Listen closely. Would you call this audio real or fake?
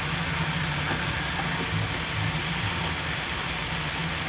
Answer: real